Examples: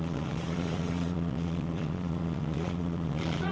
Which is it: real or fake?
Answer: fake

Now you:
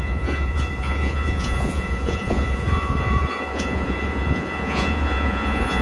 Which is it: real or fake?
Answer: fake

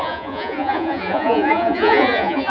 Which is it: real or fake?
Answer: fake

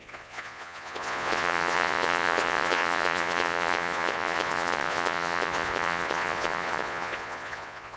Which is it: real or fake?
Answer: fake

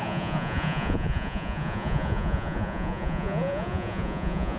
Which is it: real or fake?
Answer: fake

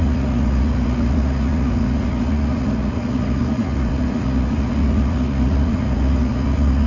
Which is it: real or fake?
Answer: fake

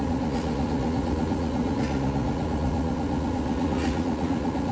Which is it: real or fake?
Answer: fake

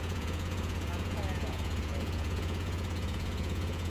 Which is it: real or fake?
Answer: fake